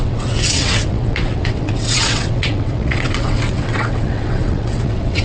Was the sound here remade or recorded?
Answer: remade